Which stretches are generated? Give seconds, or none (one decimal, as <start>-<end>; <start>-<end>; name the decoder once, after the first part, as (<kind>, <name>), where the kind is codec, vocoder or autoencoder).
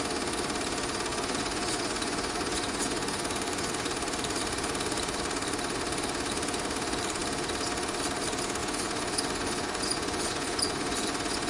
1.1-3.7 (vocoder, Vocos); 8.6-11.5